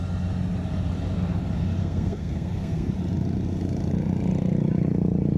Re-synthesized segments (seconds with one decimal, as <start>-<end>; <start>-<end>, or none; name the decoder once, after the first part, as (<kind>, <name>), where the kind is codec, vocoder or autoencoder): 1.8-2.9 (codec, SNAC)